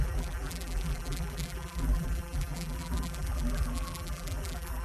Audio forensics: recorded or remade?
remade